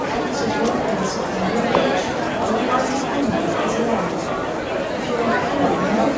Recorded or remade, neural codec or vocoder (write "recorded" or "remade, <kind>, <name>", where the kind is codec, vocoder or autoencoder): recorded